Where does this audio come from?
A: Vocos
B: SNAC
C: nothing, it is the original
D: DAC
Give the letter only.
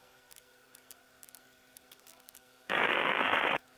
B